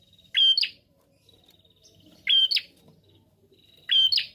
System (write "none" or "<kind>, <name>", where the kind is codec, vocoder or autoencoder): none